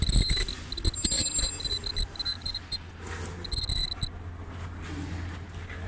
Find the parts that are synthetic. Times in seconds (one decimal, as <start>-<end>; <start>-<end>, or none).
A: 2.3-2.9